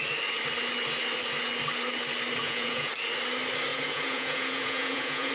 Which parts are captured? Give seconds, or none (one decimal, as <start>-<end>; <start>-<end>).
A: 0.0-2.4; 2.9-3.7